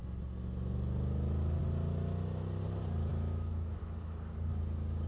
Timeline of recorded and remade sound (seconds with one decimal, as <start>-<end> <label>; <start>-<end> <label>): 0.0-3.1 recorded; 3.1-3.8 remade; 3.8-5.1 recorded